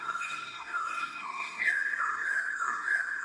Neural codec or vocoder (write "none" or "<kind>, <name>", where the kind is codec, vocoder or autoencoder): codec, SNAC